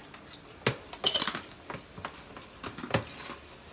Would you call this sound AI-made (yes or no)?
no